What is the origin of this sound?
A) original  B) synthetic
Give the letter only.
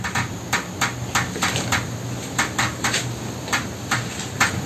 A